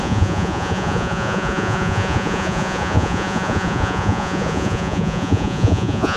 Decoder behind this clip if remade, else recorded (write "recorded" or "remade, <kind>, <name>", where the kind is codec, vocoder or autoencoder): remade, vocoder, Vocos